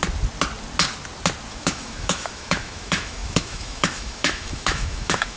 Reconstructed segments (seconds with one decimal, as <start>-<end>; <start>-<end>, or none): 1.5-5.4